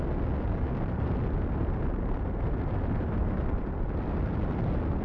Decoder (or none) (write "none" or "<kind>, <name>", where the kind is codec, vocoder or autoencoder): none